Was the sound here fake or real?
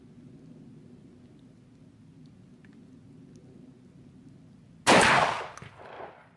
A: real